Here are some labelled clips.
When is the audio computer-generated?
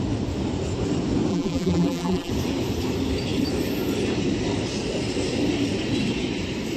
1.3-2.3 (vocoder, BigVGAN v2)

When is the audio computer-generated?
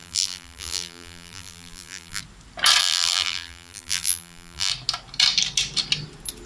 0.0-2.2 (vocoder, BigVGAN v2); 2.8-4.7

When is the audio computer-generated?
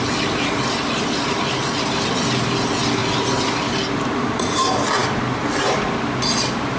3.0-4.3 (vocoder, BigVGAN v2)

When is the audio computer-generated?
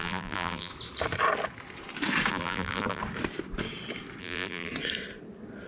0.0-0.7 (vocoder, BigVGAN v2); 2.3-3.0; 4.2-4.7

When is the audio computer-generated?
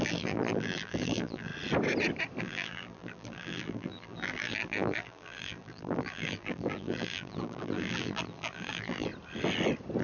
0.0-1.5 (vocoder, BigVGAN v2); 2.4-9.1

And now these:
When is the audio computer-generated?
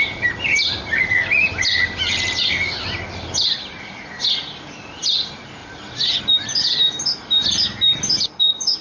5.6-6.2 (vocoder, BigVGAN v2)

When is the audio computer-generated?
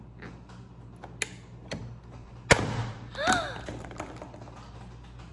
none